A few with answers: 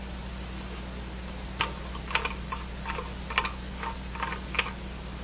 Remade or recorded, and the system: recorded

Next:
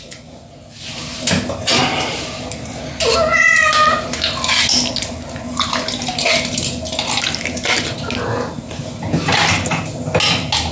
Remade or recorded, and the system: recorded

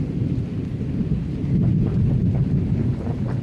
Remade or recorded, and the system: recorded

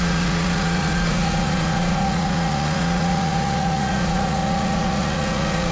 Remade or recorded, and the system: remade, vocoder, Vocos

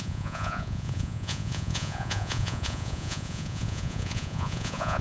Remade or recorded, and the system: remade, vocoder, Vocos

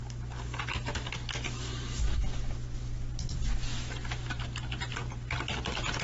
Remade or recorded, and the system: recorded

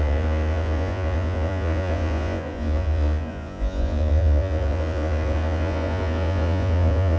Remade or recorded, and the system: remade, vocoder, Vocos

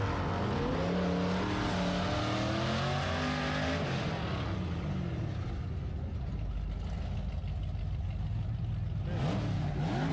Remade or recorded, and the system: recorded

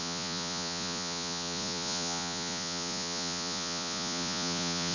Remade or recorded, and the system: remade, vocoder, Vocos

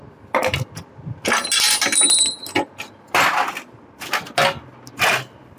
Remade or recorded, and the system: recorded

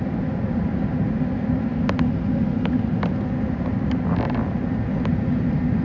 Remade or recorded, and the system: recorded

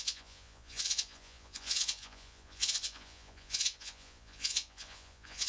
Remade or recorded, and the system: remade, vocoder, Vocos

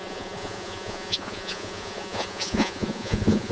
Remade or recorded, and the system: remade, vocoder, Vocos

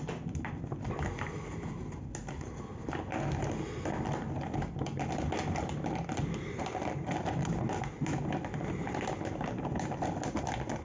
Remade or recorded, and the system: recorded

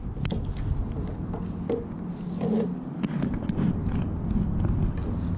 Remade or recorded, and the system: recorded